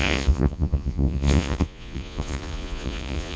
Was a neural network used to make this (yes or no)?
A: yes